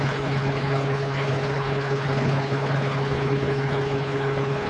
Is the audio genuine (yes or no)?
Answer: no